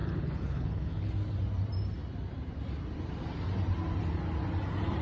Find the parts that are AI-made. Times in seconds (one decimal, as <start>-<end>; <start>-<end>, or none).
0.0-1.1

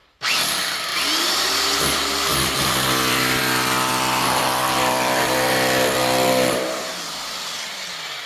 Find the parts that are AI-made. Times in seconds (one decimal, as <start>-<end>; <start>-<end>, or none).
0.0-0.5; 0.9-3.4; 3.9-6.9

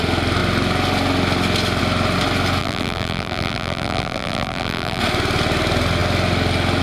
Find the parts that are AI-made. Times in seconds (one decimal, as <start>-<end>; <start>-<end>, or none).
2.6-5.0

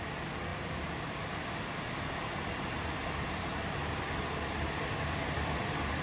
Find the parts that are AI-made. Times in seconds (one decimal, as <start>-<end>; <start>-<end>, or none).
0.0-6.0

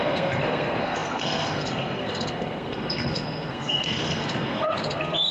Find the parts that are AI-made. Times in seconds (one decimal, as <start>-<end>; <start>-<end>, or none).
0.0-5.3

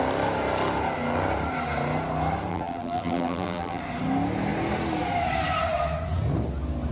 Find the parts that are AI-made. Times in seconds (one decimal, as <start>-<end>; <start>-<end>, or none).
2.5-3.8